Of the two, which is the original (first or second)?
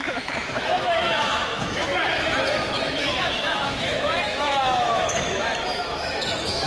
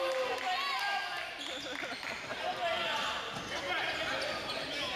second